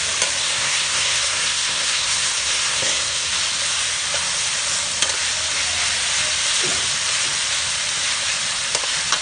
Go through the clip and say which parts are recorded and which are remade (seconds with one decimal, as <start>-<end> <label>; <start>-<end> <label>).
0.0-0.4 recorded; 0.4-3.3 remade; 3.3-9.2 recorded